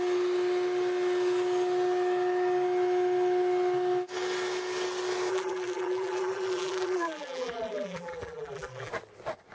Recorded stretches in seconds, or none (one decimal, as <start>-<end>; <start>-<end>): 0.0-5.3; 8.9-9.5